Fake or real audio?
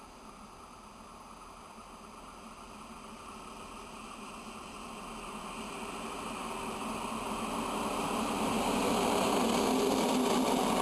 real